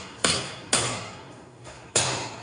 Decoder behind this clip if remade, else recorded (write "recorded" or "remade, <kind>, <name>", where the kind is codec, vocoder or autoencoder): remade, codec, SNAC